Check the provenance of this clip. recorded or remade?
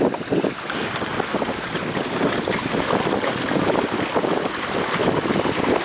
recorded